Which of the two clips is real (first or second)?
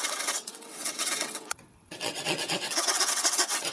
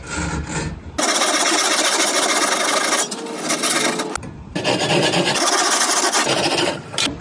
second